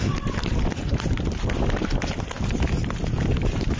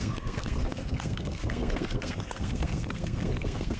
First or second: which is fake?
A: second